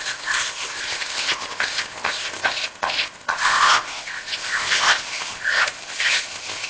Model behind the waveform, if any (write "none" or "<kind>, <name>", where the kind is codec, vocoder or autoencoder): codec, ZipCodec